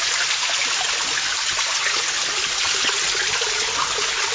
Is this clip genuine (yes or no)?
yes